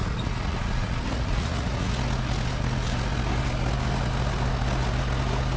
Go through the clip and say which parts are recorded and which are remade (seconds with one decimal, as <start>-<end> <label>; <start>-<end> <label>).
0.0-1.9 remade; 1.9-5.6 recorded